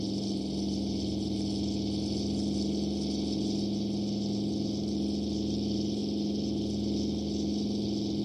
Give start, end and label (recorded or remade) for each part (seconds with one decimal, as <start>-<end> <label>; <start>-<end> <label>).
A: 0.0-8.2 recorded